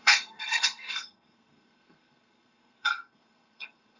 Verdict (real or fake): fake